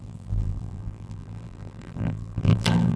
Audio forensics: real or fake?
fake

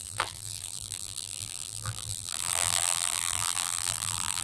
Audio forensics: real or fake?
fake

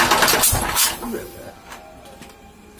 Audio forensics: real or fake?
fake